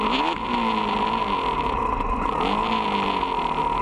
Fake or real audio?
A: real